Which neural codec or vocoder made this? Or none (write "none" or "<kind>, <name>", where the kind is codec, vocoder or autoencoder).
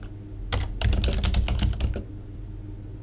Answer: none